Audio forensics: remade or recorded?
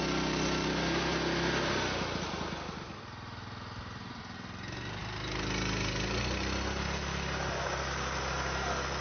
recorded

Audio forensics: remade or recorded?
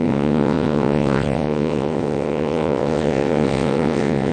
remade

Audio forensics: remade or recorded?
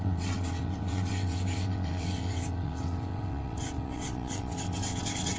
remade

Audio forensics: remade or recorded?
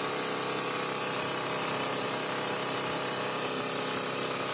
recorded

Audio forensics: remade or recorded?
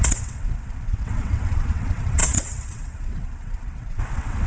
remade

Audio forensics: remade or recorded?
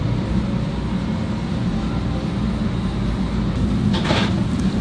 recorded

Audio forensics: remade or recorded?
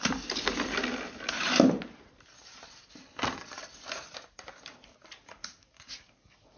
recorded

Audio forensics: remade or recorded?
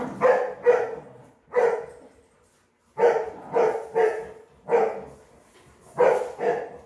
recorded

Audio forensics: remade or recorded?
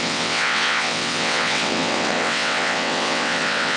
remade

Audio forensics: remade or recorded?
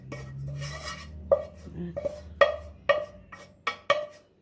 recorded